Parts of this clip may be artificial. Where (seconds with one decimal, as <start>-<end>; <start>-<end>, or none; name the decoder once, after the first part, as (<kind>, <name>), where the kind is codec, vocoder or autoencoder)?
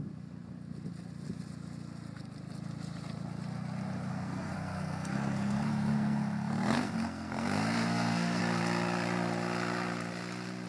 4.1-8.4 (codec, SNAC)